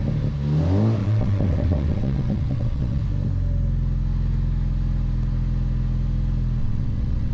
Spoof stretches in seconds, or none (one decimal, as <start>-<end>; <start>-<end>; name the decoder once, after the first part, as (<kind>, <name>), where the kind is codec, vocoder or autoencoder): 1.0-3.0 (vocoder, WaveNeXt); 6.6-7.3